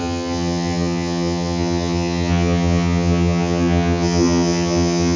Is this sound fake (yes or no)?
yes